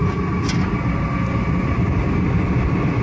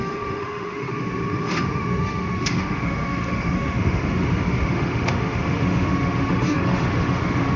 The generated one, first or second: second